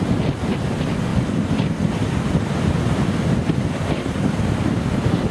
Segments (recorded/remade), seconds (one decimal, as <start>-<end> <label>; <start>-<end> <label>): 0.0-5.3 recorded